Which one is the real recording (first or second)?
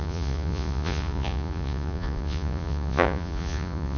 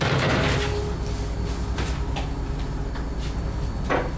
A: second